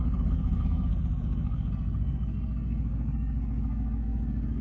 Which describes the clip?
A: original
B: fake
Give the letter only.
B